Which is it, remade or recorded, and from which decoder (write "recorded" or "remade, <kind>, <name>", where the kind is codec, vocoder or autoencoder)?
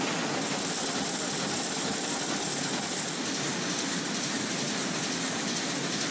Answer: recorded